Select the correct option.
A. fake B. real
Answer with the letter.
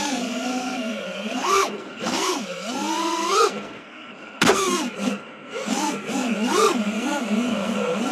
A